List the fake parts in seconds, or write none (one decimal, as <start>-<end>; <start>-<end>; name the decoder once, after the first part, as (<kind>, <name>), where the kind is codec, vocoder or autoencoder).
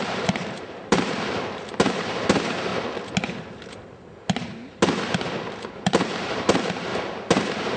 0.0-2.7 (vocoder, BigVGAN v2); 5.7-6.9